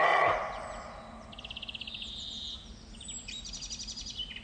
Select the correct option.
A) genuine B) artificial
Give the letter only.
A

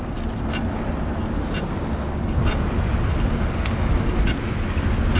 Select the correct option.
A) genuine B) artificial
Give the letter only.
A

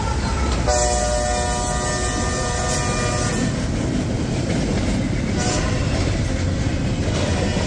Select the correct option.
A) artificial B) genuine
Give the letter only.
B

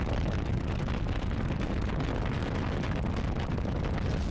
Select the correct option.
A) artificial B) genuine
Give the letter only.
B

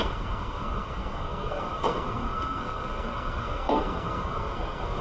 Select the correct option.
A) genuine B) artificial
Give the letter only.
B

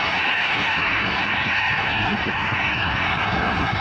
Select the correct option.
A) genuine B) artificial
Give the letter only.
B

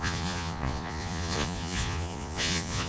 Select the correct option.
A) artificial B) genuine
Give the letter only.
A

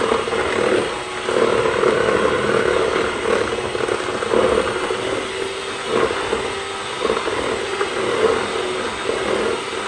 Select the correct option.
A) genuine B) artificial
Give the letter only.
A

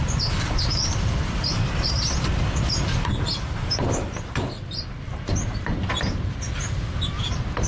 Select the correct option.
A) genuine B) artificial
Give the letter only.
B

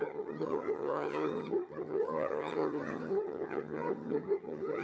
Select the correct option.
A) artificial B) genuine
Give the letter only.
A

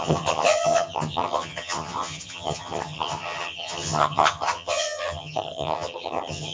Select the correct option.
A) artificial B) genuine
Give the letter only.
A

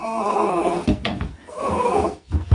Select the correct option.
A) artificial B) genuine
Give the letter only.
A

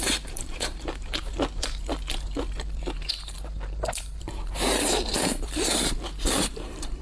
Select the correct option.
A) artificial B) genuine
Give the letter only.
A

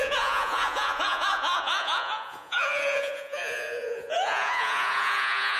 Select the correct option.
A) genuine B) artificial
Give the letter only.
B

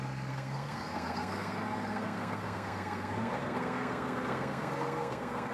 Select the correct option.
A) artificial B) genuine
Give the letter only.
A